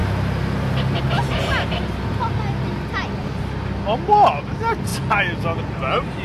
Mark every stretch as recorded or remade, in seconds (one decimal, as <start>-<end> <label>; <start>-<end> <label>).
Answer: 0.0-6.2 recorded